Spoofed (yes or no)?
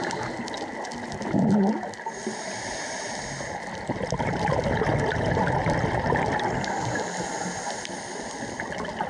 no